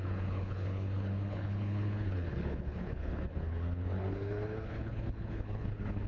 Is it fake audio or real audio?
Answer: fake